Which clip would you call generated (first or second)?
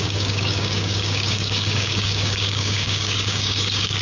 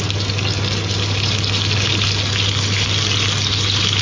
first